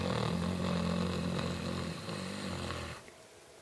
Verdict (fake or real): real